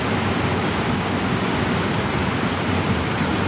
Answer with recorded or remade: recorded